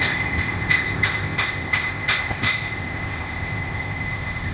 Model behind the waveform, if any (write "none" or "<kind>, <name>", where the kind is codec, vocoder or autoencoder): codec, ZipCodec